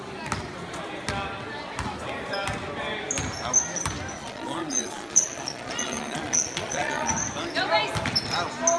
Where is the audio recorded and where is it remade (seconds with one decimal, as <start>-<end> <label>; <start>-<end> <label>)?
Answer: 0.0-4.2 recorded; 4.2-7.1 remade; 7.1-8.8 recorded